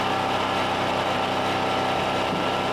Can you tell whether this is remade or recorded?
recorded